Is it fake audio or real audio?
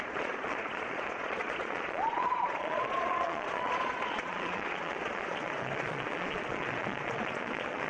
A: fake